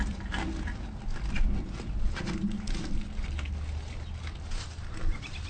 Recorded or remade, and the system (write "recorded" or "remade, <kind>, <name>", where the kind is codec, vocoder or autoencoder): recorded